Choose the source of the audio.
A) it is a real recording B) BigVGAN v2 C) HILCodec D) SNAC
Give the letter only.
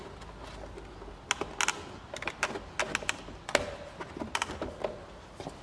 A